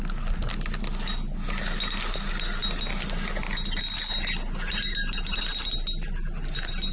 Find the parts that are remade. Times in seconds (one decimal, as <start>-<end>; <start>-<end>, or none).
none